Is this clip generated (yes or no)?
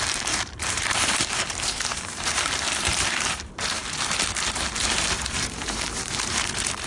yes